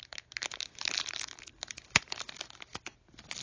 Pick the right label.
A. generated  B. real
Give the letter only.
B